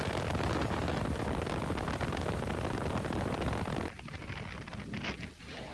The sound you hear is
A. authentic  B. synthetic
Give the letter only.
A